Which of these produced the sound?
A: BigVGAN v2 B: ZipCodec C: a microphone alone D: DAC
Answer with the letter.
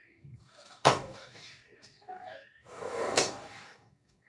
D